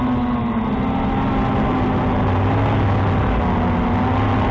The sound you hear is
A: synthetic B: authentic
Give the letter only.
B